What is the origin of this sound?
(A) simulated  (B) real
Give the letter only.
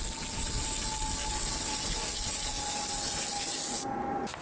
B